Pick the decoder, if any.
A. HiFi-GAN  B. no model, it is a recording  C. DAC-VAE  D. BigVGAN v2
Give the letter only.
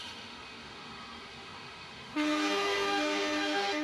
C